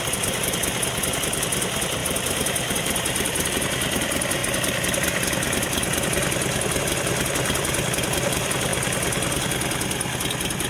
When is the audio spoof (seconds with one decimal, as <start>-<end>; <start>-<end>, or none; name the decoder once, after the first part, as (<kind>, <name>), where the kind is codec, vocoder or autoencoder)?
2.0-3.5 (vocoder, BigVGAN v2)